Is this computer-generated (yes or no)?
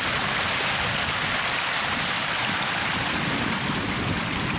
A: yes